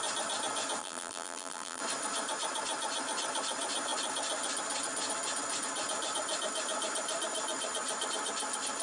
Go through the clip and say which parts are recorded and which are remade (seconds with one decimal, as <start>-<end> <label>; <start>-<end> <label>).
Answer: 0.0-0.8 recorded; 0.8-1.8 remade; 1.8-8.8 recorded